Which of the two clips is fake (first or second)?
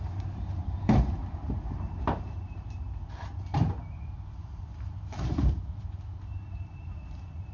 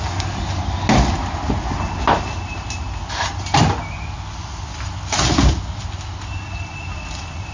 first